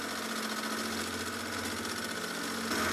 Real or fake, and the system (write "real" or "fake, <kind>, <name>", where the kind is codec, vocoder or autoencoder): real